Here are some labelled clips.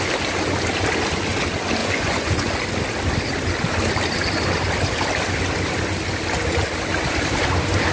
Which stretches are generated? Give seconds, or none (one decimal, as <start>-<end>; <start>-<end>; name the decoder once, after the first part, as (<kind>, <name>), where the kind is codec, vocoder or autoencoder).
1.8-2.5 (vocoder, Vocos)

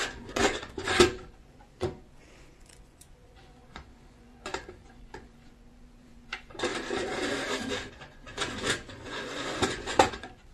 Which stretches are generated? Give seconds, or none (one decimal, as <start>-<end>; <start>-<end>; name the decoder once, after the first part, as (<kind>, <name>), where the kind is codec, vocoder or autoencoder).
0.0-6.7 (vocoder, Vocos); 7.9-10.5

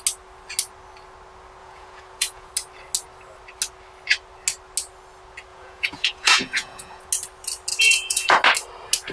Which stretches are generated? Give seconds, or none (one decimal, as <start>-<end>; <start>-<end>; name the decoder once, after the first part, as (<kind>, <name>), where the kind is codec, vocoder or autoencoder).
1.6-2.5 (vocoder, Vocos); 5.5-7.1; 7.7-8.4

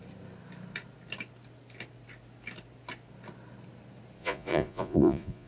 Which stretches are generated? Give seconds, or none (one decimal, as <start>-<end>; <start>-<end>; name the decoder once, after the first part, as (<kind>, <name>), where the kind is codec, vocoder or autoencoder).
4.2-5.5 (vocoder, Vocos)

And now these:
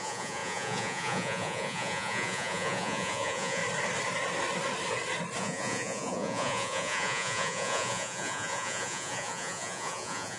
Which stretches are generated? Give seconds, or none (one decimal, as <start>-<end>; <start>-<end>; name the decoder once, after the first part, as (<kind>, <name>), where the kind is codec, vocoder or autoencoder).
0.0-3.6 (vocoder, Vocos); 5.4-10.4

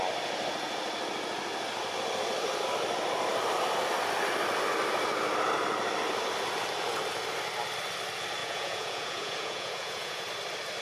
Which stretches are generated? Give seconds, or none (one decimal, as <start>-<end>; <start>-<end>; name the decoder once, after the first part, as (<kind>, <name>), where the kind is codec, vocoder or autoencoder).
8.4-10.3 (vocoder, Vocos)